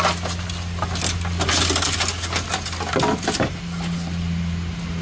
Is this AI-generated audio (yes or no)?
no